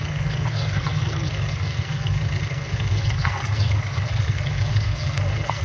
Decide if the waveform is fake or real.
fake